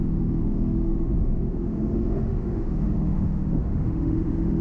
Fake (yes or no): yes